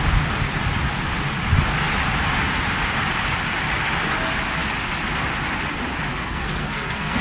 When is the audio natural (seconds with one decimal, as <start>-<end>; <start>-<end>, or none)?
0.0-6.1